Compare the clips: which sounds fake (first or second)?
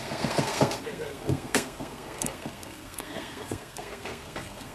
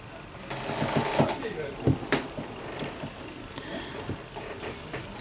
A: first